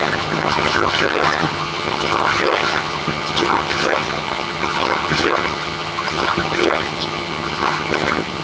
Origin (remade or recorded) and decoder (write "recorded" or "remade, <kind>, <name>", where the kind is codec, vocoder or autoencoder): remade, vocoder, HiFi-GAN